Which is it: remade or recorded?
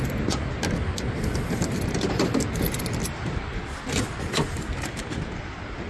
recorded